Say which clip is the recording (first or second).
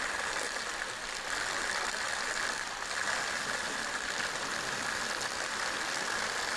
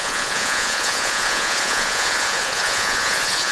first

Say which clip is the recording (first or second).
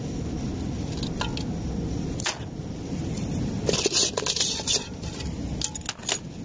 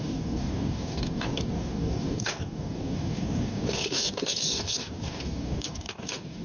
first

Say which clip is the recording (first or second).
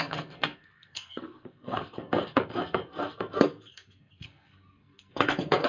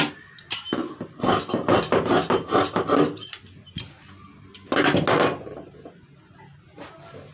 second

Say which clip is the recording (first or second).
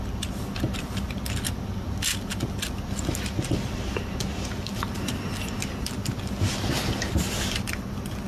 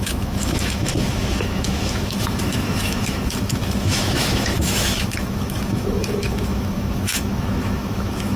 first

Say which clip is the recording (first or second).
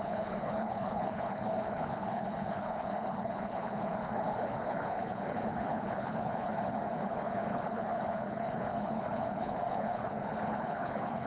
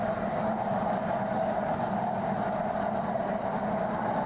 second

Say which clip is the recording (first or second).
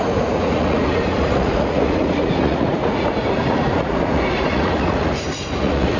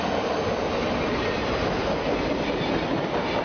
second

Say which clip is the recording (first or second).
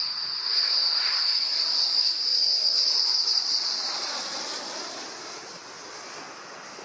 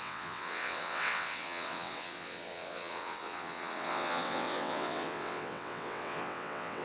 first